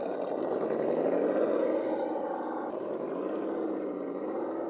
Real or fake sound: real